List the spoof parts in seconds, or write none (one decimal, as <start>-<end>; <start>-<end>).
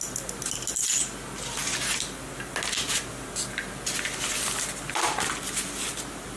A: none